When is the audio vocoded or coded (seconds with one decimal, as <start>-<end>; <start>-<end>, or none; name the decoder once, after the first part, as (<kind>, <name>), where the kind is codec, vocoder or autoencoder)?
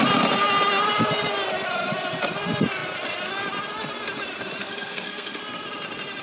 4.6-5.4 (codec, SNAC)